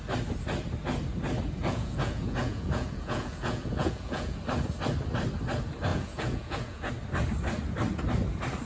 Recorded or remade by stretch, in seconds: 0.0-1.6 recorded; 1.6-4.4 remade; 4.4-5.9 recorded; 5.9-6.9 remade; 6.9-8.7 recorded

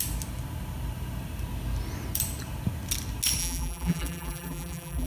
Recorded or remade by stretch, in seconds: 0.0-3.4 recorded; 3.4-5.1 remade

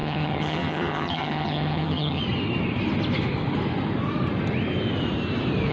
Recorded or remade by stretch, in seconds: 0.0-2.2 remade; 2.2-5.7 recorded

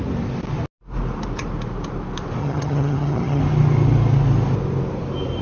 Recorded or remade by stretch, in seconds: 0.0-2.4 recorded; 2.4-3.4 remade; 3.4-5.4 recorded

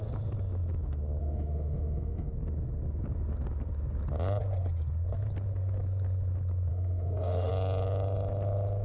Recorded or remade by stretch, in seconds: 0.0-1.2 recorded; 1.2-2.3 remade; 2.3-6.7 recorded; 6.7-7.5 remade; 7.5-8.8 recorded